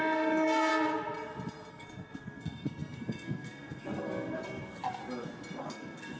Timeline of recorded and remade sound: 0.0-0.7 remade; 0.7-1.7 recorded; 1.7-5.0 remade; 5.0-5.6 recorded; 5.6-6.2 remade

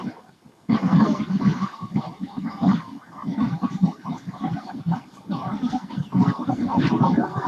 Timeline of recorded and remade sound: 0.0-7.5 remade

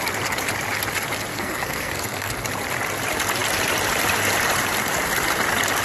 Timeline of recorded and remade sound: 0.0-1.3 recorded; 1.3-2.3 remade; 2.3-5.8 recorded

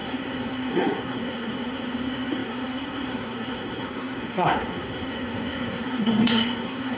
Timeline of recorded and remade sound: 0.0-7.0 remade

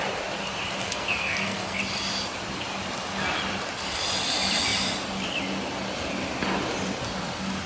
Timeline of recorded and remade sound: 0.0-0.8 recorded; 0.8-1.8 remade; 1.8-7.7 recorded